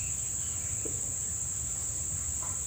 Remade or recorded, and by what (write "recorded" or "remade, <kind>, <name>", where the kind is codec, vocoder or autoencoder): recorded